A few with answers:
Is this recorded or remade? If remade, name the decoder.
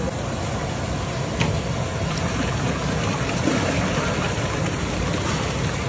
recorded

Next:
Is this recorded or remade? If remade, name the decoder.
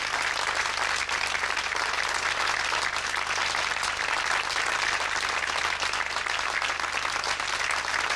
recorded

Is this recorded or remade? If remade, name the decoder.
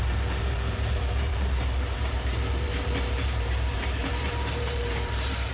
remade, vocoder, BigVGAN v2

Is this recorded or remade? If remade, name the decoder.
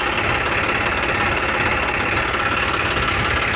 recorded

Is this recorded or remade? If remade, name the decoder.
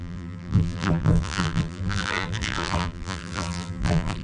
remade, vocoder, BigVGAN v2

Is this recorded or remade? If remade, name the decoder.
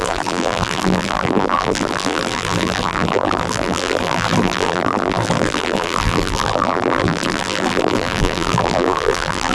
remade, vocoder, BigVGAN v2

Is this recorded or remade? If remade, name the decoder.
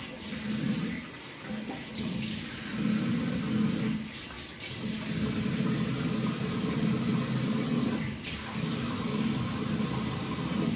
recorded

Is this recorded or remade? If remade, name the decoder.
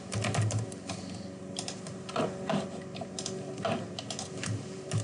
recorded